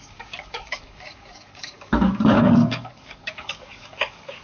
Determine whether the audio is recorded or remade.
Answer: remade